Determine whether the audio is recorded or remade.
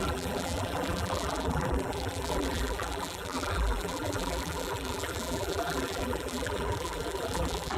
remade